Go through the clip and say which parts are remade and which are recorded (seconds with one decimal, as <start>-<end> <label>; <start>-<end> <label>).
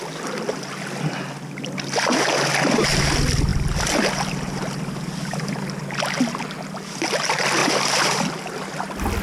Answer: 0.0-9.2 recorded